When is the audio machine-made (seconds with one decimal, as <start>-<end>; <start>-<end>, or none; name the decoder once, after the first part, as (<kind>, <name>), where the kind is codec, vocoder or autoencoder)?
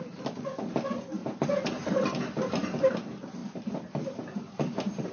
none